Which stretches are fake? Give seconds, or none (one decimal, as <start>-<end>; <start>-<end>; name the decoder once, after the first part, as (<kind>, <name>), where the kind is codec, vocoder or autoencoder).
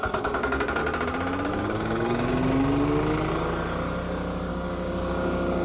0.0-0.8 (codec, DAC); 1.5-2.4; 4.5-5.6